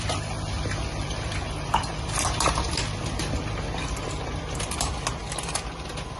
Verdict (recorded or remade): remade